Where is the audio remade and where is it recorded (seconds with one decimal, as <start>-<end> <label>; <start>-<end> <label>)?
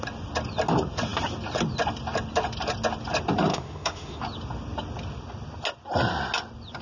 0.0-3.5 recorded; 3.5-4.2 remade; 4.2-6.8 recorded